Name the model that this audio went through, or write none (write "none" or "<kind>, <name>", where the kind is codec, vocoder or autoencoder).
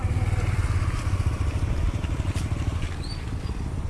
vocoder, BigVGAN v2